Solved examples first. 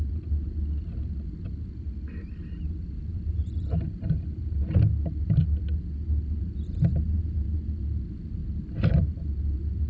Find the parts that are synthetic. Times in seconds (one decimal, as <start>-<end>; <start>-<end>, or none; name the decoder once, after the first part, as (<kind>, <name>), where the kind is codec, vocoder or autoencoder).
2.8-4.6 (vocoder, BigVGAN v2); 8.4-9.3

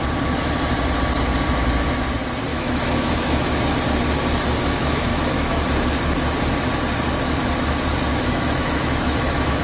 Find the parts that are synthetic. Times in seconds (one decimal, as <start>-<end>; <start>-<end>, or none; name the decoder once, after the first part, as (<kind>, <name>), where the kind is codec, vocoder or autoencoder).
2.5-3.6 (autoencoder, DAC-VAE); 5.1-5.7; 8.1-9.6

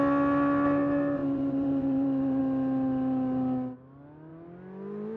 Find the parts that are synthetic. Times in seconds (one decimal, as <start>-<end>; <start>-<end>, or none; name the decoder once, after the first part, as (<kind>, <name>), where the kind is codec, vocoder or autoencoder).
1.2-2.4 (vocoder, BigVGAN v2)

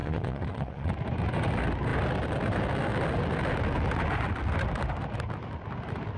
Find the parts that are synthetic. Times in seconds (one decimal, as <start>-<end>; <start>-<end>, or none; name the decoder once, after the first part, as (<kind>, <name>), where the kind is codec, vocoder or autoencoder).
0.0-0.9 (vocoder, Vocos)

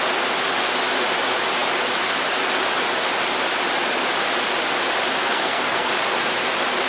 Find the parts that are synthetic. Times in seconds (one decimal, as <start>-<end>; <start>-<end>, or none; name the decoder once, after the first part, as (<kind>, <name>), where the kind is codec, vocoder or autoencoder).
5.2-5.9 (codec, SNAC)